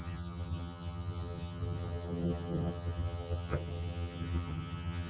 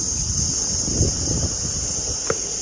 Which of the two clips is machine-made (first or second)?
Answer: first